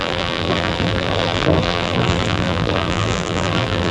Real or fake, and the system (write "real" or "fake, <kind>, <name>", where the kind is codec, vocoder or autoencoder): fake, vocoder, BigVGAN v2